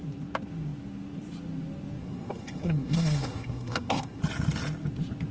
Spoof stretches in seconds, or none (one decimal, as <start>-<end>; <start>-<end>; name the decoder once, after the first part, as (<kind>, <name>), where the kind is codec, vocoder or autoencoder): 2.0-4.2 (codec, SNAC)